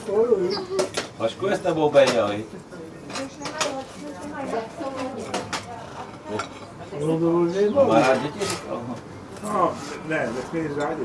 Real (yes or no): yes